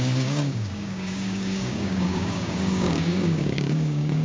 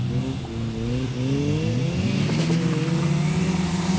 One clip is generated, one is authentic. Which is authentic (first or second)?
second